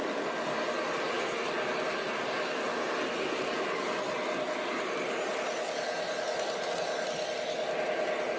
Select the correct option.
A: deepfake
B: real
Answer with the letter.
B